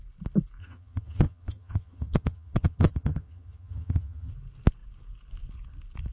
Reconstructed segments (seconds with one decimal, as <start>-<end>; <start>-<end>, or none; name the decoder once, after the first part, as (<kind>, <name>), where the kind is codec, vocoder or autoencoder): 0.6-4.3 (vocoder, HiFi-GAN)